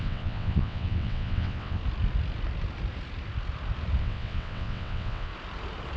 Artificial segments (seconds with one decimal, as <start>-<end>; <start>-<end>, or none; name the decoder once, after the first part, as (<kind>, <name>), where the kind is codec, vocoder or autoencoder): 0.0-1.8 (vocoder, WaveNeXt); 4.0-5.3